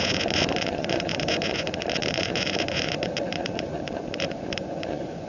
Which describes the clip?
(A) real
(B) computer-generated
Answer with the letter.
B